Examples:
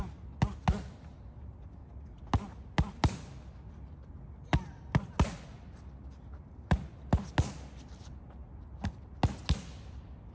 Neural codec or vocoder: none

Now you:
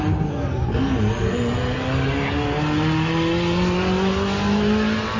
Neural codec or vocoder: none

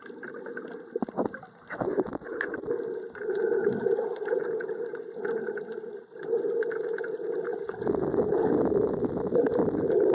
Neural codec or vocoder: none